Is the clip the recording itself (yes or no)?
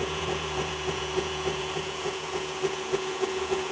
no